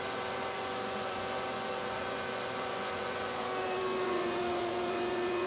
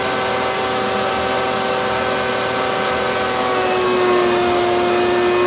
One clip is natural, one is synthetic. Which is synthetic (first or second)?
first